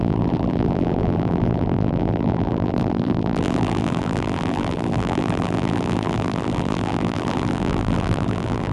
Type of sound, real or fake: fake